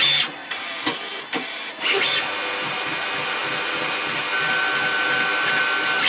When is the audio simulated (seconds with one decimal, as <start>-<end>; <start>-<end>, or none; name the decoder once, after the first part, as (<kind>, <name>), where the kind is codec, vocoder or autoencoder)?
0.4-2.8 (vocoder, BigVGAN v2)